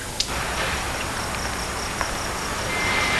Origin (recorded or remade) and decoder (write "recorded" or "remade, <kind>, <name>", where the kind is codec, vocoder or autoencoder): recorded